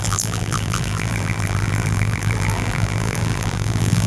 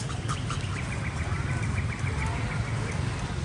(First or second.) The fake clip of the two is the first